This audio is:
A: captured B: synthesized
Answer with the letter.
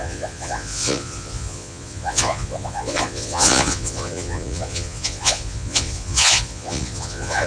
B